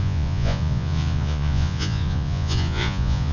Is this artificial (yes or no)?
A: yes